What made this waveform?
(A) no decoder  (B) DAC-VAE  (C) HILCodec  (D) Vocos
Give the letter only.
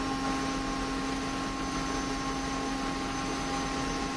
A